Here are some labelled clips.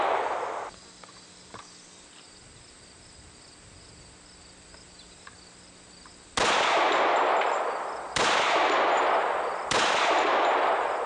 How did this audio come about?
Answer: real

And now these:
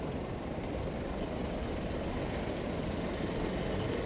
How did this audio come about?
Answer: real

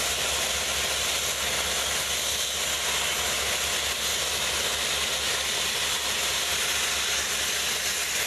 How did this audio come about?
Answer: real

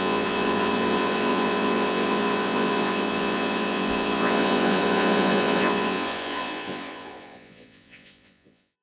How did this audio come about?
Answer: fake